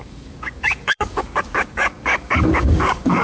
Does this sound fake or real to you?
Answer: fake